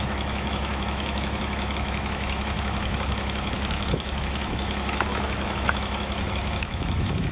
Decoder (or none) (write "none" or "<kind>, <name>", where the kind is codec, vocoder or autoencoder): autoencoder, DAC-VAE